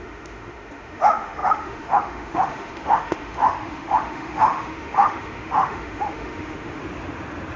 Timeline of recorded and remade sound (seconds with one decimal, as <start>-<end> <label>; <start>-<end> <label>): 0.0-6.8 remade; 6.8-7.6 recorded